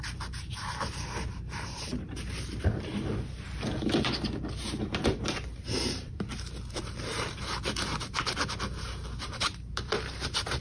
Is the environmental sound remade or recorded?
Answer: remade